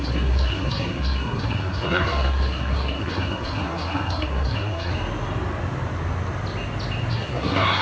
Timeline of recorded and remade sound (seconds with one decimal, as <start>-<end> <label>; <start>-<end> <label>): 0.0-4.9 remade; 4.9-7.1 recorded; 7.1-7.8 remade